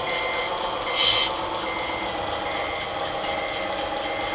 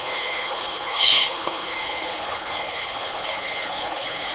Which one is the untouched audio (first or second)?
first